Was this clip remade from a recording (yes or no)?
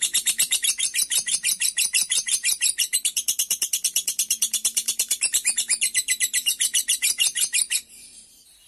yes